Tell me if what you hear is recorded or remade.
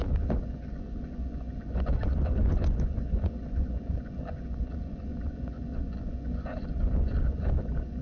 remade